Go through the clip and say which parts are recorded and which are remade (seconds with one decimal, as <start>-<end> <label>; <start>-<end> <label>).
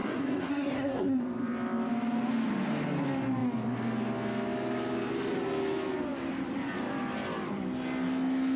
0.0-1.2 remade; 1.2-8.6 recorded